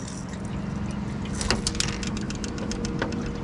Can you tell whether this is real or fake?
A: real